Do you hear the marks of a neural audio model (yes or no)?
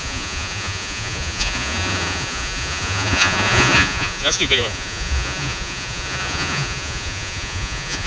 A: yes